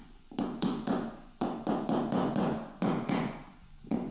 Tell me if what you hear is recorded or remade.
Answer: remade